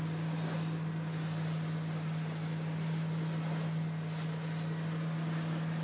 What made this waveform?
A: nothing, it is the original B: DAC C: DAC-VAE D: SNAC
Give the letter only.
A